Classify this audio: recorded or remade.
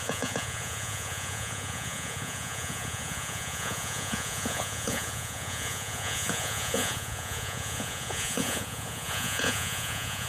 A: remade